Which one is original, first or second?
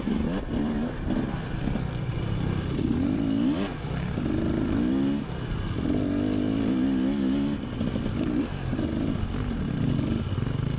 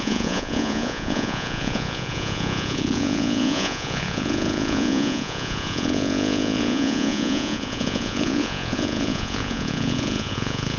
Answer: first